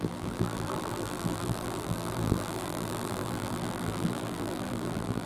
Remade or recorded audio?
remade